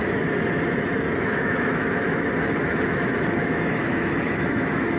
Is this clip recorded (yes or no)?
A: no